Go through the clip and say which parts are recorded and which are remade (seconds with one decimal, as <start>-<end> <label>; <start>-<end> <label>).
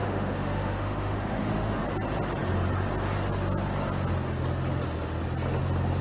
0.0-1.8 remade; 1.8-6.0 recorded